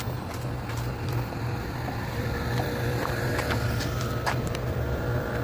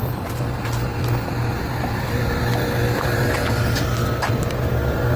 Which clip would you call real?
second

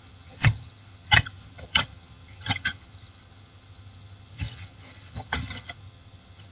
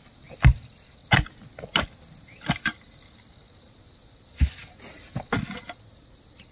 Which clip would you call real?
second